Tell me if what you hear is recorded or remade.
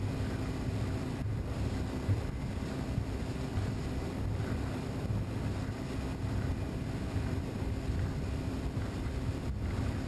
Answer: remade